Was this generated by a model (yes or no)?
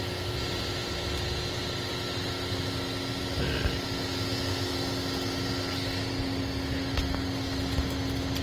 no